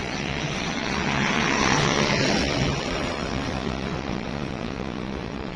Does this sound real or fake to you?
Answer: fake